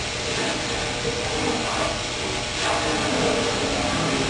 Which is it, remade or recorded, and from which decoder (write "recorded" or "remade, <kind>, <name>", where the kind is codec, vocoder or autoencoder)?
recorded